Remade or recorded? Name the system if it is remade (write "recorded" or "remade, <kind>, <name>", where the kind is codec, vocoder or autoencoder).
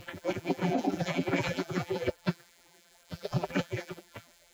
remade, vocoder, BigVGAN v2